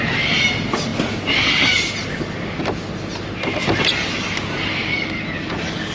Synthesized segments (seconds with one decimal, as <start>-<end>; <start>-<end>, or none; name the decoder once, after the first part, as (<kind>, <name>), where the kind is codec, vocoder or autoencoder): none